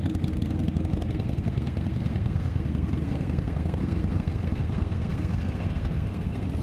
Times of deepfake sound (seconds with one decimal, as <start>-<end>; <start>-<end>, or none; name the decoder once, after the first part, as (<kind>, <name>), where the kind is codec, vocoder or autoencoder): 0.0-6.6 (codec, SNAC)

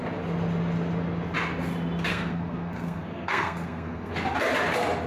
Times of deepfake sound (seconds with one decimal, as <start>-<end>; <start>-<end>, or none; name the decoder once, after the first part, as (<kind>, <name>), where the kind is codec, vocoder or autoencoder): 2.1-4.1 (codec, SNAC)

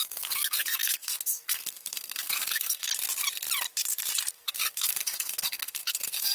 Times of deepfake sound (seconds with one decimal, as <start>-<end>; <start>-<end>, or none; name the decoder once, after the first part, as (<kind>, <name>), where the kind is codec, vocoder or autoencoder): 0.0-2.9 (codec, SNAC); 4.3-6.3

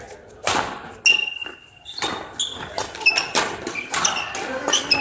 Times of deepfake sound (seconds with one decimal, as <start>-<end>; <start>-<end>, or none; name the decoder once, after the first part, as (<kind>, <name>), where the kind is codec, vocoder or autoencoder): none

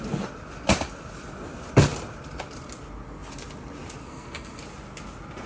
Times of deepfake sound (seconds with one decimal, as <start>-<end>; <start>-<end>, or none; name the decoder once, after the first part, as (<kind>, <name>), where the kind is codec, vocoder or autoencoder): 4.0-4.6 (codec, SNAC)

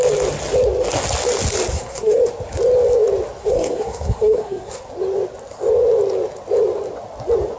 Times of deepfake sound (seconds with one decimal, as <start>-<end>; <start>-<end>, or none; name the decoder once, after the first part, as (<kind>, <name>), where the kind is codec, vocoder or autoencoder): 1.7-2.2 (codec, SNAC); 3.4-4.9

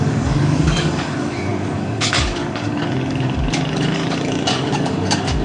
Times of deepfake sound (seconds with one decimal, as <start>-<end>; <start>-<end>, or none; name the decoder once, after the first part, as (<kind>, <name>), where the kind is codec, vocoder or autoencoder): 0.0-5.4 (codec, DAC)

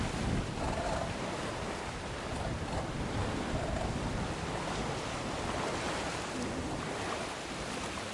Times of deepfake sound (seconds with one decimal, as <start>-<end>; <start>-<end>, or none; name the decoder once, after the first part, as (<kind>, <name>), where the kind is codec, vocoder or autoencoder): none